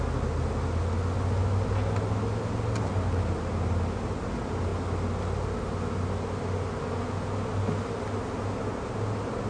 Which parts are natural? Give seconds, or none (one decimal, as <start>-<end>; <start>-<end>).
0.0-9.5